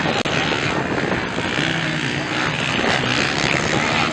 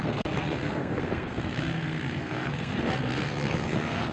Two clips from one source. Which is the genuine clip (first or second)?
first